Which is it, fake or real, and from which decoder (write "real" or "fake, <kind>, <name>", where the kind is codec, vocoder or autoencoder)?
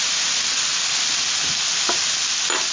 real